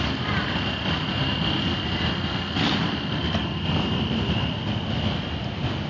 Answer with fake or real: real